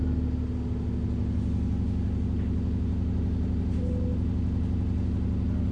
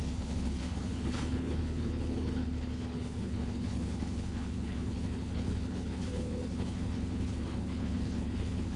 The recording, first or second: first